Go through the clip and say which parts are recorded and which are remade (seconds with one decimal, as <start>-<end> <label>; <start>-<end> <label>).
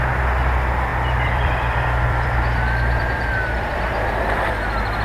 0.0-0.9 recorded; 0.9-3.9 remade; 3.9-5.0 recorded